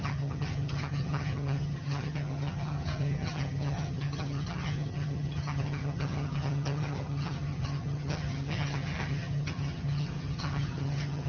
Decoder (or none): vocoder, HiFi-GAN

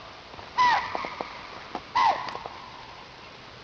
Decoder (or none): none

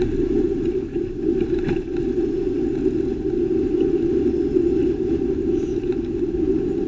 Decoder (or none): none